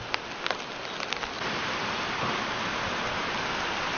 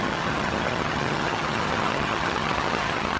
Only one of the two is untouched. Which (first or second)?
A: first